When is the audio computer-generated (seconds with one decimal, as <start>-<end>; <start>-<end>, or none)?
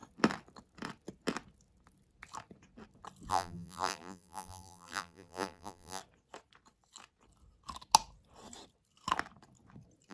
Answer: 3.3-6.0